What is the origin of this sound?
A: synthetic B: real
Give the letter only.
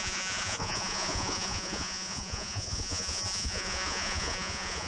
A